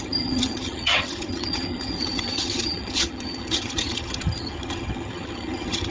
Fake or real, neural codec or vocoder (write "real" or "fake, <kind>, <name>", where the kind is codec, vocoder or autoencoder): fake, vocoder, HiFi-GAN